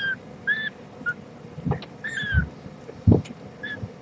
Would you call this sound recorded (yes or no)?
yes